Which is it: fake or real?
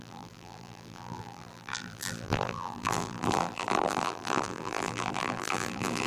fake